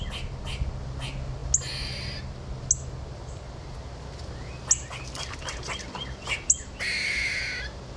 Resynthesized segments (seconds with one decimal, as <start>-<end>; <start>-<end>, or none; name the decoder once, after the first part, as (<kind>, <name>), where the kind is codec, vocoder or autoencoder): none